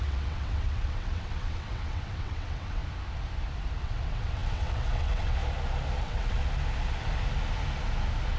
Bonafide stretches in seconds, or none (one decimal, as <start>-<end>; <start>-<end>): 2.8-3.8; 5.4-6.0; 6.4-8.4